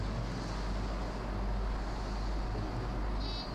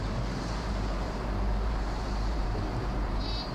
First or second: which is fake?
second